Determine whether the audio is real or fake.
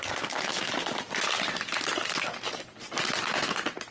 real